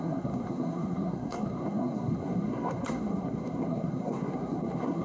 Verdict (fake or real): fake